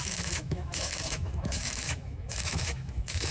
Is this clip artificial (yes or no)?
yes